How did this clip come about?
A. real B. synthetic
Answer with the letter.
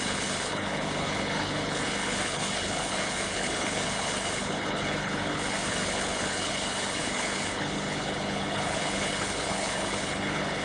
B